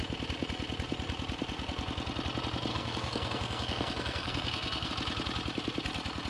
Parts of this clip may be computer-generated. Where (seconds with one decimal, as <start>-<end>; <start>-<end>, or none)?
2.7-4.9